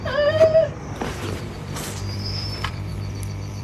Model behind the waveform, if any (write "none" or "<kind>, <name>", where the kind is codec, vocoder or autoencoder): vocoder, BigVGAN v2